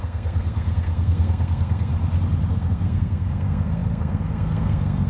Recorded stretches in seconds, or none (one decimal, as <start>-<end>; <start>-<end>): 1.9-2.5

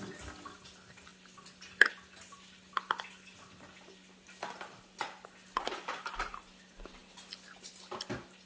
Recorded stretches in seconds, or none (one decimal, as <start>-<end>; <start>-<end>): 0.0-8.5

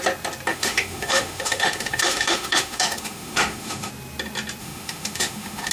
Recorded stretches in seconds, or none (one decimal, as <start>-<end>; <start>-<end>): 0.0-0.5; 3.9-4.6